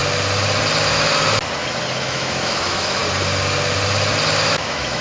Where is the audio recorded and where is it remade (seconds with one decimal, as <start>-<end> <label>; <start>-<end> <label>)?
0.0-2.0 recorded; 2.0-3.0 remade; 3.0-4.5 recorded; 4.5-5.0 remade